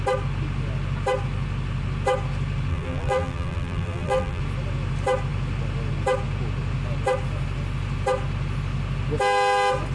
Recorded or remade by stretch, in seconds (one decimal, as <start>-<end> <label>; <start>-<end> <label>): 0.0-2.7 recorded; 2.7-4.4 remade; 4.4-9.9 recorded